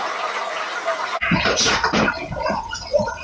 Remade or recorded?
remade